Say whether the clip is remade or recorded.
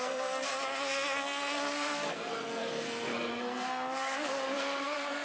remade